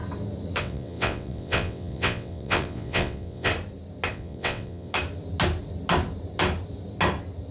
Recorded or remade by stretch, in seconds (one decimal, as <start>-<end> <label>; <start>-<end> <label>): 0.0-0.6 recorded; 0.6-3.5 remade; 3.5-4.1 recorded; 4.1-4.9 remade; 4.9-7.5 recorded